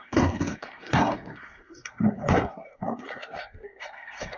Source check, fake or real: fake